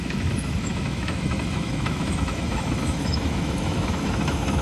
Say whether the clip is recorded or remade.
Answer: remade